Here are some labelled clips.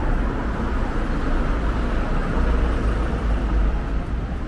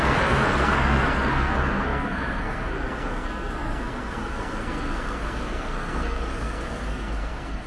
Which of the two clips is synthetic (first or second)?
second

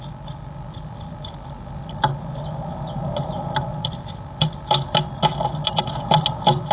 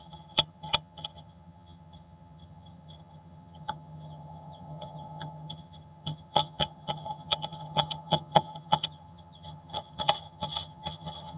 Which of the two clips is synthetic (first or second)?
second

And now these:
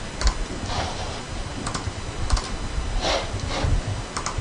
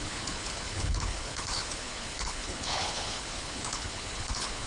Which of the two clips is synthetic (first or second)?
second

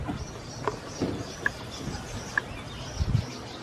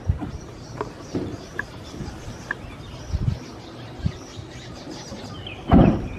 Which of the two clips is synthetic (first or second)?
second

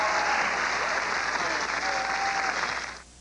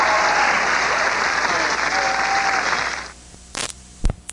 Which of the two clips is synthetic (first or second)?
second